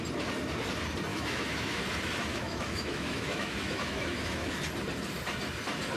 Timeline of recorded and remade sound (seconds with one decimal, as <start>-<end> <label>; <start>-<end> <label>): 0.0-1.1 recorded; 1.1-1.8 remade; 1.8-2.3 recorded; 2.3-4.5 remade; 4.5-6.0 recorded